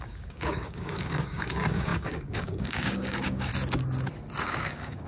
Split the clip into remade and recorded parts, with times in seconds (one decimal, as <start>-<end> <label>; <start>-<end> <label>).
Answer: 0.0-3.5 remade; 3.5-4.4 recorded; 4.4-5.1 remade